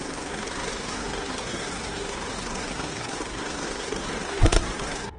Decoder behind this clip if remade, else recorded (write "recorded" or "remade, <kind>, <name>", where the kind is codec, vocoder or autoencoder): remade, codec, SNAC